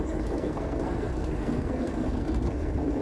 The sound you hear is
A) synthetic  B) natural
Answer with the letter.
A